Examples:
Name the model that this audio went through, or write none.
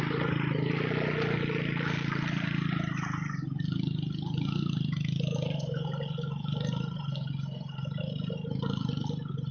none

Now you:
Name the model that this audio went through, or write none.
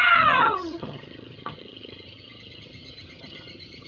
vocoder, HiFi-GAN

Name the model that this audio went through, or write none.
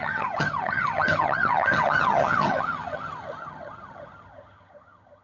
vocoder, HiFi-GAN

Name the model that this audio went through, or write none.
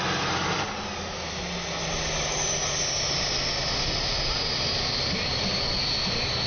none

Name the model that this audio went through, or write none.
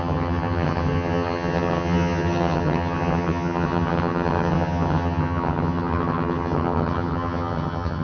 vocoder, HiFi-GAN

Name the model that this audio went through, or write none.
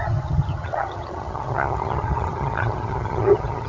vocoder, HiFi-GAN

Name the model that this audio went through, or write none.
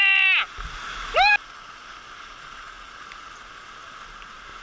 none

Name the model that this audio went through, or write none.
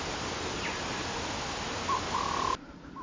none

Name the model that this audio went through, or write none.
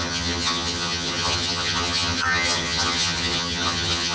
vocoder, HiFi-GAN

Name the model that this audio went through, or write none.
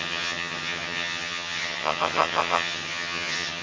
vocoder, HiFi-GAN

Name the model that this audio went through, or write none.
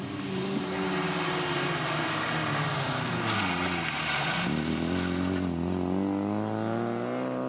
none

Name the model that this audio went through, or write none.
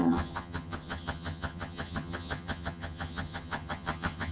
vocoder, HiFi-GAN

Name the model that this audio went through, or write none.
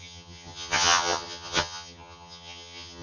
vocoder, HiFi-GAN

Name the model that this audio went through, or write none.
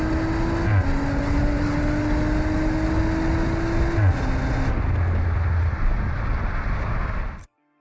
none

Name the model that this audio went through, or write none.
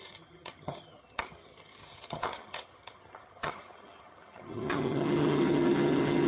vocoder, HiFi-GAN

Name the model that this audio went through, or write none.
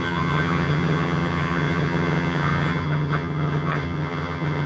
vocoder, HiFi-GAN